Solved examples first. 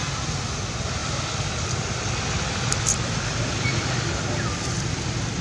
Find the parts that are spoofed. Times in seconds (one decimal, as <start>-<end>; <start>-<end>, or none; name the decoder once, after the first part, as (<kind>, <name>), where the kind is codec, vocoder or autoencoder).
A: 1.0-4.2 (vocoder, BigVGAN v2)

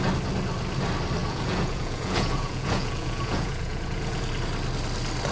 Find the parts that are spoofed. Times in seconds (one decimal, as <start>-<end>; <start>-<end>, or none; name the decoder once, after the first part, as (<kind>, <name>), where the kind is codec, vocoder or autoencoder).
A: 1.2-4.3 (vocoder, Vocos)

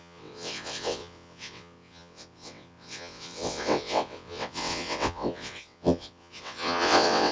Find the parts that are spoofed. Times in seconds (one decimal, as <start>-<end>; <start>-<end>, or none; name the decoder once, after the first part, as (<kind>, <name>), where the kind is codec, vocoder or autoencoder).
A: 0.0-7.3 (vocoder, WaveNeXt)

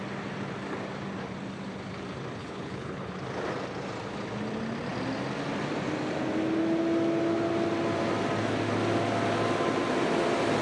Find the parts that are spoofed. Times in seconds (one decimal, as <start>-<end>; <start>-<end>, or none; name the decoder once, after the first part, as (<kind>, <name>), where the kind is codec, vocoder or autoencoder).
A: 2.4-3.1 (codec, HILCodec)